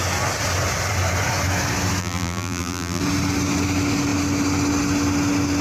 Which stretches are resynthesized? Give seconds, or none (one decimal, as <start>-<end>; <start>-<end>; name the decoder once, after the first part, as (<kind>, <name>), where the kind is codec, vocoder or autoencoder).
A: 2.0-3.0 (vocoder, BigVGAN v2)